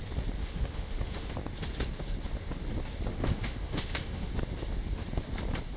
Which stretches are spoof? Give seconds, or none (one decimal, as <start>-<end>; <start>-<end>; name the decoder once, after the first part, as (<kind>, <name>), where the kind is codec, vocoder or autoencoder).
0.4-1.3 (autoencoder, DAC-VAE); 3.1-4.3